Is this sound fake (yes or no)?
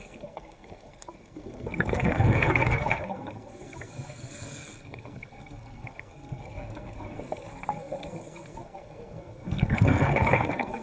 yes